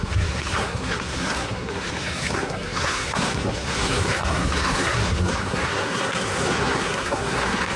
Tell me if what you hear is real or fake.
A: fake